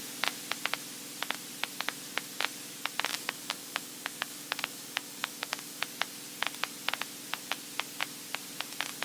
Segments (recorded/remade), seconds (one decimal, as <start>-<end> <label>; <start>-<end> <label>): 0.0-3.1 recorded; 3.1-5.8 remade; 5.8-9.0 recorded